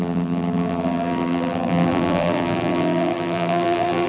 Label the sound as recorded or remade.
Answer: remade